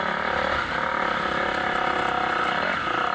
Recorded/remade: recorded